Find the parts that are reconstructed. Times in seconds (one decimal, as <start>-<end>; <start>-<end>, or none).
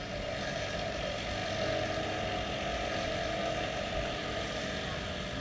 none